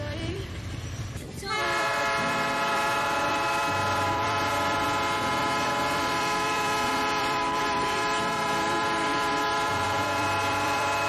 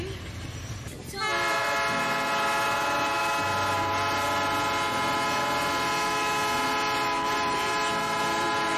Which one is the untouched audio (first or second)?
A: second